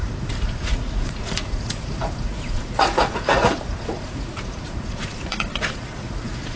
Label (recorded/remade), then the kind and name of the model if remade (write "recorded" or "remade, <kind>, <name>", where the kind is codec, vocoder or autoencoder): remade, vocoder, Vocos